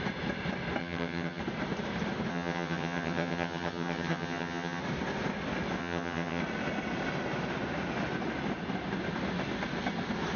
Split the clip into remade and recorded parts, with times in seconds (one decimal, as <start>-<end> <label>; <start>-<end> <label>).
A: 0.0-0.8 recorded; 0.8-1.4 remade; 1.4-2.3 recorded; 2.3-4.8 remade; 4.8-5.8 recorded; 5.8-6.4 remade; 6.4-10.4 recorded